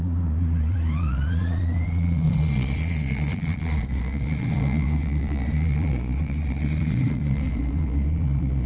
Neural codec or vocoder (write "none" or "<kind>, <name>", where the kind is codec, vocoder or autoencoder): vocoder, Vocos